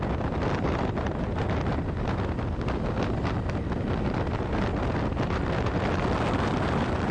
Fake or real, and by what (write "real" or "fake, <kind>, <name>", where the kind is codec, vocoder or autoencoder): real